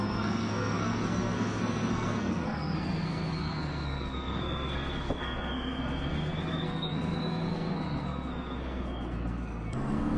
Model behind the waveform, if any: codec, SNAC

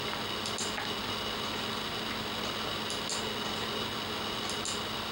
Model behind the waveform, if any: none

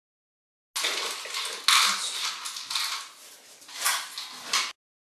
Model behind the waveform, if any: none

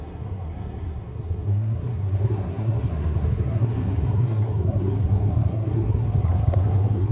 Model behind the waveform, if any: codec, SNAC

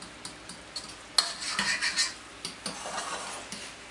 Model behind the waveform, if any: none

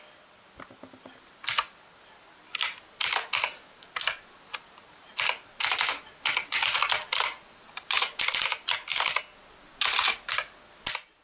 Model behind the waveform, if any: none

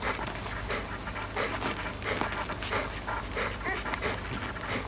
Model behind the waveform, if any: none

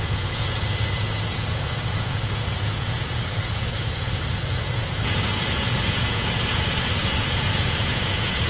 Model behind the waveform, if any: vocoder, Vocos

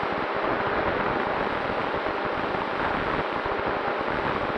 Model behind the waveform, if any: none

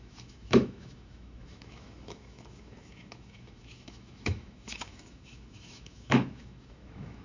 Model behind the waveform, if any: autoencoder, DAC-VAE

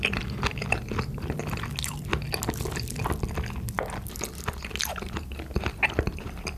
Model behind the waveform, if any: none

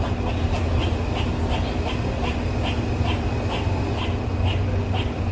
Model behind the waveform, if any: none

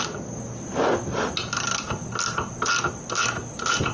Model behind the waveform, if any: none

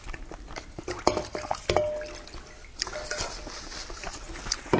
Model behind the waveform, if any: none